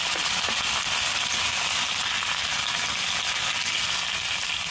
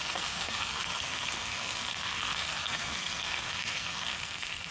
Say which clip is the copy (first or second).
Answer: second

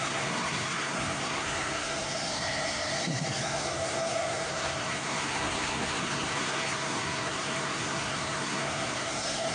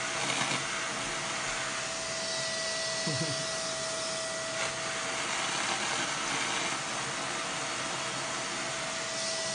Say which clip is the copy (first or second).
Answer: first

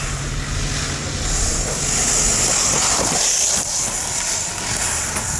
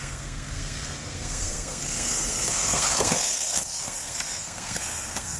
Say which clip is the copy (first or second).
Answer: second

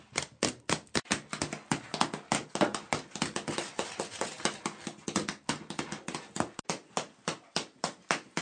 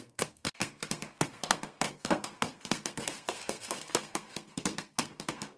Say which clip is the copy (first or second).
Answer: second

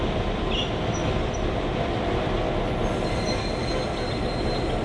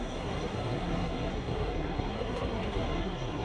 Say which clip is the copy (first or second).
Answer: second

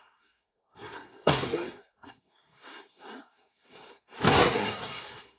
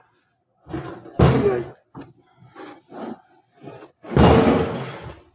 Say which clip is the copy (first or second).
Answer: first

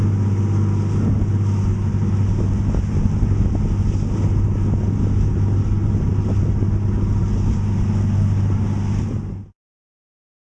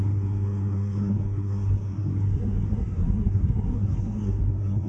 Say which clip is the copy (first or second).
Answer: second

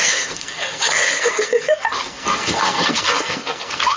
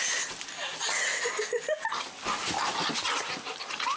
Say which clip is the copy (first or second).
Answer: first